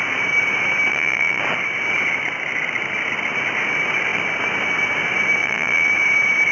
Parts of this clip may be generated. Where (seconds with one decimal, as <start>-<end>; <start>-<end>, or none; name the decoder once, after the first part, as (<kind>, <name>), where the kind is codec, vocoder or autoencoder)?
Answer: 0.9-1.4 (vocoder, Vocos); 5.4-5.9